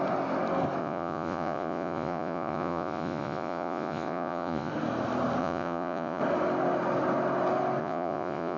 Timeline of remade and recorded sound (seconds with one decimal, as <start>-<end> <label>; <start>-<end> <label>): 0.0-0.8 recorded; 0.8-4.7 remade; 4.7-5.4 recorded; 5.4-6.2 remade; 6.2-7.8 recorded; 7.8-8.6 remade